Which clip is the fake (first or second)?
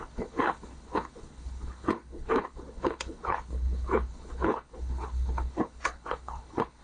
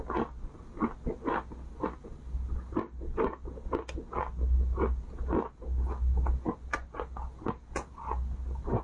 first